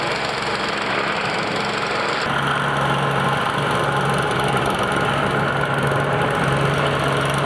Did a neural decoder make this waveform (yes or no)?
no